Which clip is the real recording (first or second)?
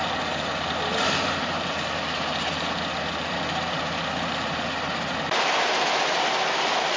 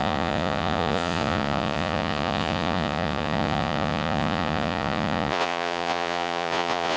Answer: first